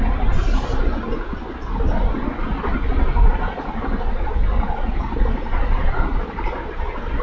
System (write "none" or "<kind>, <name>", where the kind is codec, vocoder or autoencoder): none